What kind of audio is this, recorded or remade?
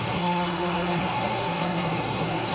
remade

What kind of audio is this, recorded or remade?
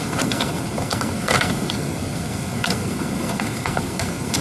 remade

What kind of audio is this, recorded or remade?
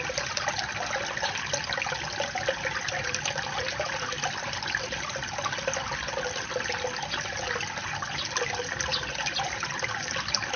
recorded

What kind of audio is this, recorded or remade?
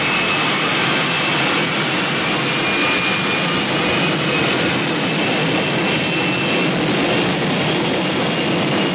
recorded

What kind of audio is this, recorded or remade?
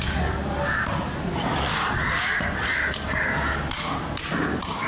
recorded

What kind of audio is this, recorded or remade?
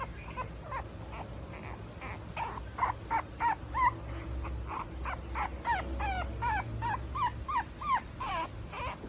recorded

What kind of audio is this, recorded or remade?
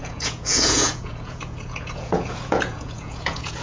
remade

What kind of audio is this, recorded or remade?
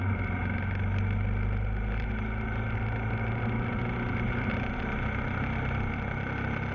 recorded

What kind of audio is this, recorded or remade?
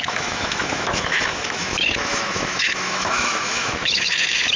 remade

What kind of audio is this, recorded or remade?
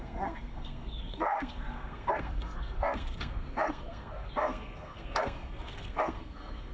remade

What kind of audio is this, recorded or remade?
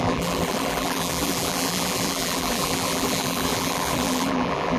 remade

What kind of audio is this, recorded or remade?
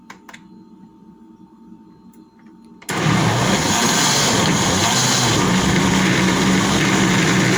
recorded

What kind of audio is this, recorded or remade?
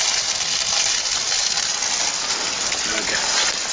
recorded